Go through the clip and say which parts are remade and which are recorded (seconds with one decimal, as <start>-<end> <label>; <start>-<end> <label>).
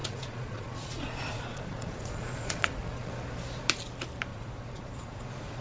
0.0-3.1 remade; 3.1-4.3 recorded; 4.3-5.6 remade